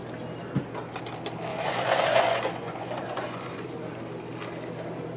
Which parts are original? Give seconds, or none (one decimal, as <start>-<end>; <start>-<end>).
0.0-1.5; 3.7-5.2